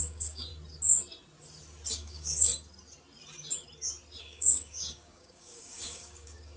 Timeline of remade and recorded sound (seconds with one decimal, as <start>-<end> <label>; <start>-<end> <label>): 0.0-0.5 remade; 0.5-1.9 recorded; 1.9-2.5 remade; 2.5-4.2 recorded; 4.2-6.6 remade